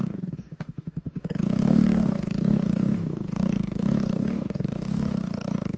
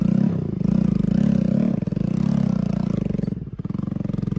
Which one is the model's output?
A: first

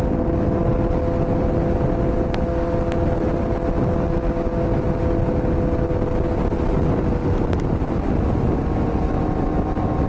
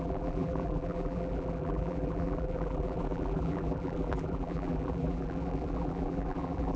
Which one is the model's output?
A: second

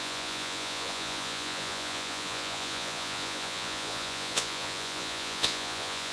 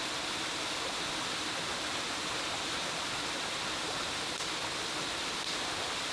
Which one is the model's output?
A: first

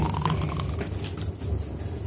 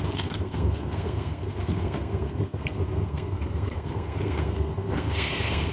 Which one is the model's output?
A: second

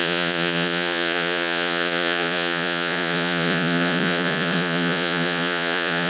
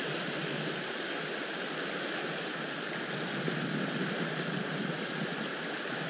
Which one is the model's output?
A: first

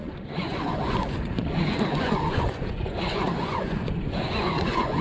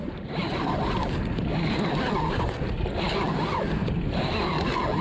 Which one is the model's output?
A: first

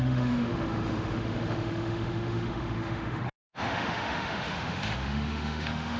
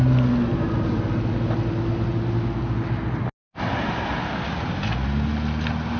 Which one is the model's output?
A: first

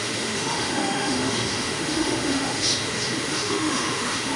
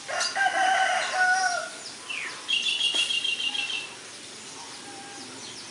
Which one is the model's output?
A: first